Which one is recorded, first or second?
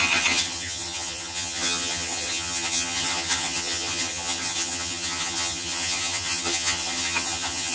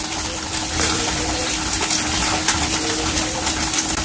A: second